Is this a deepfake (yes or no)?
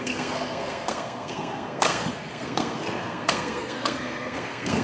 yes